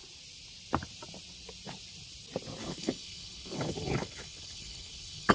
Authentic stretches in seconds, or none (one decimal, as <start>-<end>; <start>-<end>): 0.0-2.6